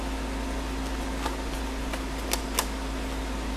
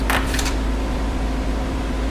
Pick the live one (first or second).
first